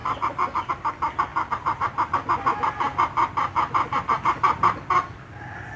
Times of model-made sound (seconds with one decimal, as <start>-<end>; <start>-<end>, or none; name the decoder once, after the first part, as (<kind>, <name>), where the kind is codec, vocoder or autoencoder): 0.0-0.7 (vocoder, BigVGAN v2); 1.3-2.5; 2.9-4.6